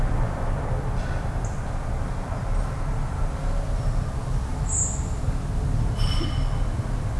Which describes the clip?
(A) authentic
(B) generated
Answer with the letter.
A